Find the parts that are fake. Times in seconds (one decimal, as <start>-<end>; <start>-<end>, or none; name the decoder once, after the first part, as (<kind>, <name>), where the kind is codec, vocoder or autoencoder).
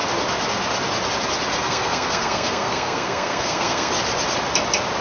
1.5-3.9 (codec, SNAC)